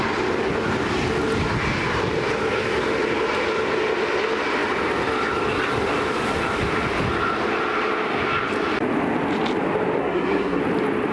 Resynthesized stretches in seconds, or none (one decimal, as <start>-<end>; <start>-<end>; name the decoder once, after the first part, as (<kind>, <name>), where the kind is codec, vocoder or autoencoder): 10.0-10.6 (codec, SNAC)